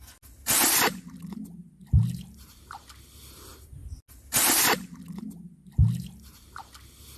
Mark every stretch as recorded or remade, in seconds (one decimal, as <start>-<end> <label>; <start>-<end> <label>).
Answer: 0.0-7.2 recorded